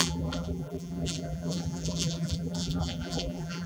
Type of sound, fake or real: fake